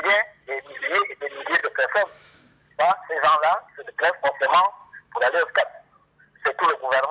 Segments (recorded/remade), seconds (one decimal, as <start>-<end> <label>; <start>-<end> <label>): 0.0-0.7 remade; 0.7-1.6 recorded; 1.6-2.8 remade; 2.8-4.8 recorded; 4.8-5.6 remade; 5.6-7.1 recorded